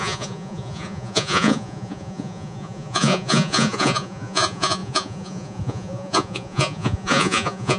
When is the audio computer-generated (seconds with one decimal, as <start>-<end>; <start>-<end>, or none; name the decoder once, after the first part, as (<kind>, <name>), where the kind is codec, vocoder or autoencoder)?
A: 0.0-7.8 (vocoder, Vocos)